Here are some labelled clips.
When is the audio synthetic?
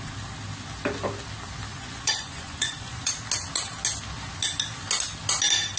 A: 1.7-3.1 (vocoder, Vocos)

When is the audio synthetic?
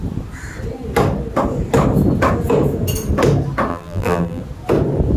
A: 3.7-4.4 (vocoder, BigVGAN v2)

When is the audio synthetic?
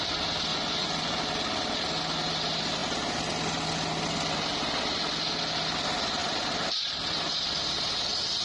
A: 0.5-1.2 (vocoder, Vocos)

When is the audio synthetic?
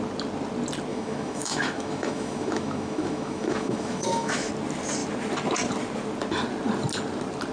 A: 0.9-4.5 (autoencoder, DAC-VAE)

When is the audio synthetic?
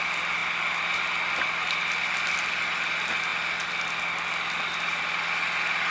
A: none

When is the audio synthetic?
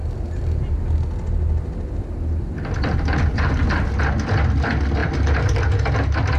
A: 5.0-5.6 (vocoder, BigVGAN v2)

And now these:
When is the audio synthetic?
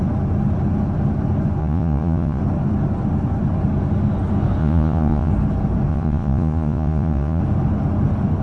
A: 1.6-2.4 (vocoder, Vocos); 4.6-5.3; 5.9-7.4